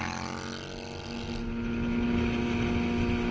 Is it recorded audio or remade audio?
recorded